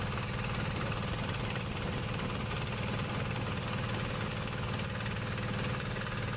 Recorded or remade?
recorded